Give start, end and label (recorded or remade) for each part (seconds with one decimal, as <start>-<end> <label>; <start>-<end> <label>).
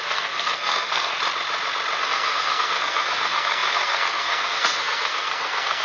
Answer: 0.0-1.1 remade; 1.1-2.0 recorded; 2.0-5.8 remade